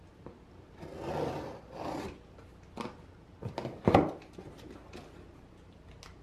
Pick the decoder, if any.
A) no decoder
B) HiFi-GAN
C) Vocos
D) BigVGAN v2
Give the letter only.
A